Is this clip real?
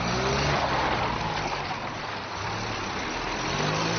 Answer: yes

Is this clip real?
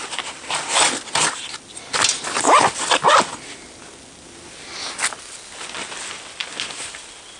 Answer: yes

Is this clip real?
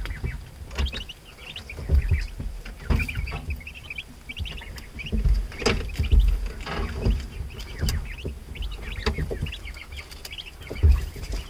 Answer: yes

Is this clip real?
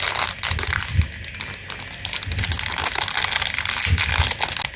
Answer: yes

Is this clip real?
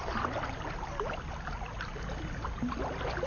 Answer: yes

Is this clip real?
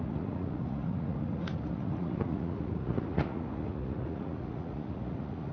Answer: no